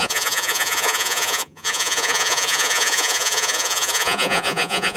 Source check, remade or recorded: remade